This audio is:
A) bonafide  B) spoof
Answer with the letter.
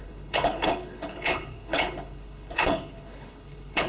B